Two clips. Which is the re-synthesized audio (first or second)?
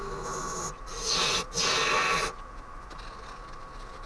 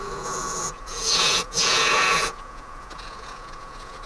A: second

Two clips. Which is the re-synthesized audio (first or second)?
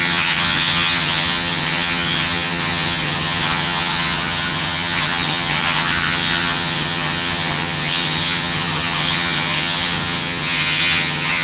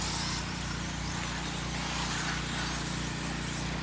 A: first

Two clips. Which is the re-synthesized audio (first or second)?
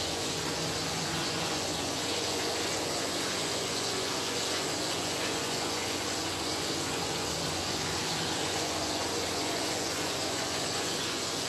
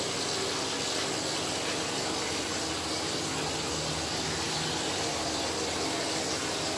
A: first